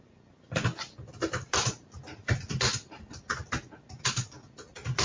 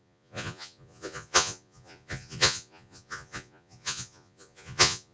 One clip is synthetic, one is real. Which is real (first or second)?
first